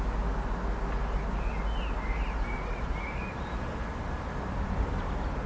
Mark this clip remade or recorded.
recorded